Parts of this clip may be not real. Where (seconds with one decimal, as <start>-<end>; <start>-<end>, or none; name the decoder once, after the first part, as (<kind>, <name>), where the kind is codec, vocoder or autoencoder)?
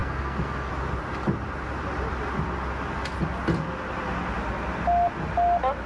0.0-0.7 (codec, SNAC)